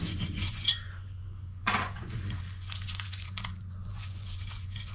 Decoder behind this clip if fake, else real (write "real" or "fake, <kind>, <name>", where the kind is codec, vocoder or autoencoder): fake, vocoder, Vocos